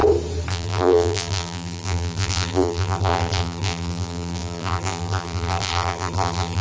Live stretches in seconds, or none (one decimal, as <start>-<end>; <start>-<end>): 0.0-0.5